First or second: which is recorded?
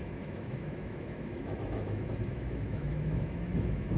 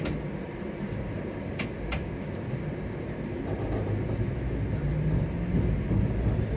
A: second